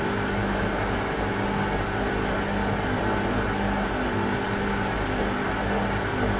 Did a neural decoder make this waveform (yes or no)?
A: no